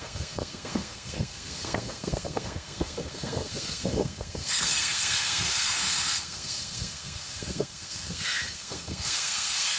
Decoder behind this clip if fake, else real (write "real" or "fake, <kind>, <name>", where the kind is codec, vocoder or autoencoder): fake, codec, SNAC